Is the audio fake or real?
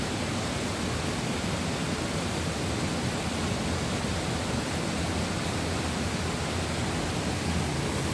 real